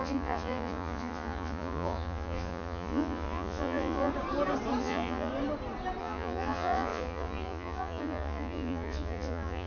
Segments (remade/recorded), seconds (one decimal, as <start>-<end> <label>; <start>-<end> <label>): 0.0-4.1 remade; 4.1-4.8 recorded; 4.8-5.3 remade; 5.3-6.0 recorded; 6.0-9.7 remade